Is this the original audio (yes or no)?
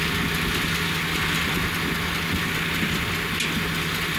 yes